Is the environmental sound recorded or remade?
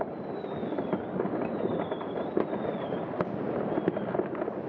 recorded